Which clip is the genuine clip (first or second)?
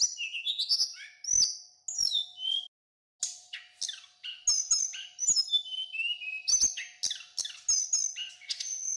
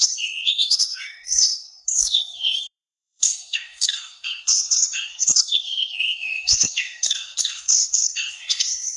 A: first